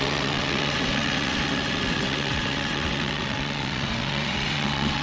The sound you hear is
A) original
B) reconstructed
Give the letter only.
B